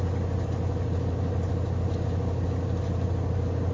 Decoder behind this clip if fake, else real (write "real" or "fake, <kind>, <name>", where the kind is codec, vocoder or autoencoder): real